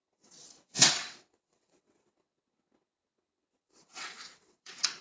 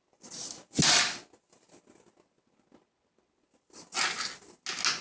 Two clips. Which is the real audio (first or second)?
second